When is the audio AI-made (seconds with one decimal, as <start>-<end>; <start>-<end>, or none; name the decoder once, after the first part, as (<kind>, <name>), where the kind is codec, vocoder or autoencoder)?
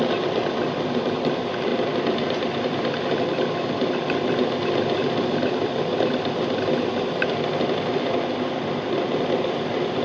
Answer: none